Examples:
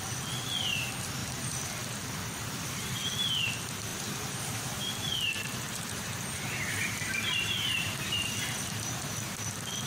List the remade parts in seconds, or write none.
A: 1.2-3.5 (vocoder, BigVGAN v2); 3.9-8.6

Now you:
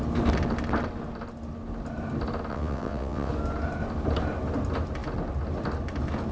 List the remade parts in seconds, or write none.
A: 2.5-3.3 (vocoder, WaveNeXt)

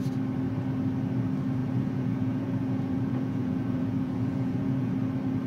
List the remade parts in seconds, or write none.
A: 1.6-4.9 (vocoder, Vocos)